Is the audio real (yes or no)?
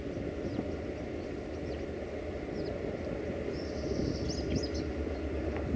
yes